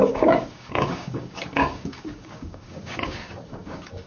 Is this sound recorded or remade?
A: remade